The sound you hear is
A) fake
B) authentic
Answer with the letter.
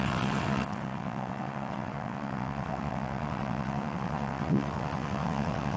A